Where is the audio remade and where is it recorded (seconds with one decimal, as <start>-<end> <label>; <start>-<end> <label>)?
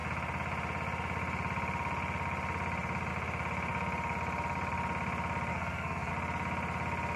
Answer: 0.0-5.5 recorded; 5.5-6.1 remade; 6.1-7.2 recorded